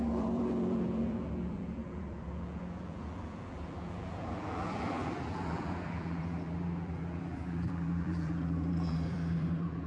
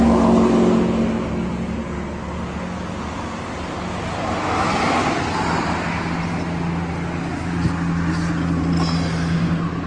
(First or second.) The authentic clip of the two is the second